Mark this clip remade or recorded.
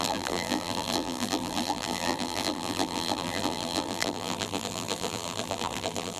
remade